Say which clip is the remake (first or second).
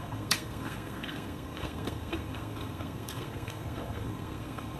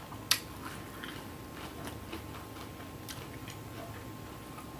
first